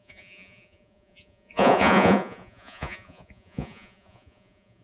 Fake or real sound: fake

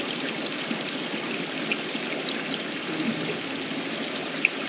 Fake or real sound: real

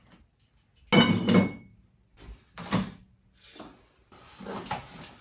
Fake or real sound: real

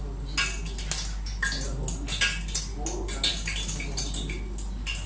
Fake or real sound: real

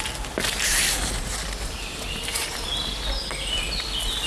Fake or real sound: real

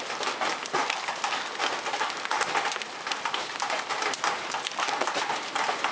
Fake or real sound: real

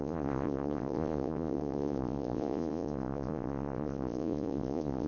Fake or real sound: fake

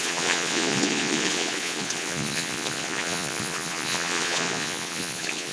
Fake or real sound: fake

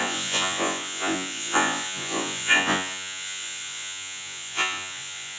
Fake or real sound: fake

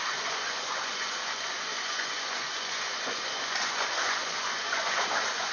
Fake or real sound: fake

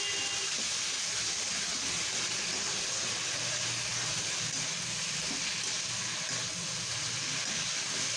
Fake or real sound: real